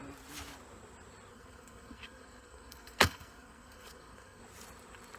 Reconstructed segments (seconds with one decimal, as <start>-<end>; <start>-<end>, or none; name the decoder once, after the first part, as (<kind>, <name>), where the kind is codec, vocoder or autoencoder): 1.3-4.4 (codec, SNAC)